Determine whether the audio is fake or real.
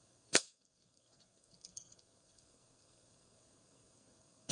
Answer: fake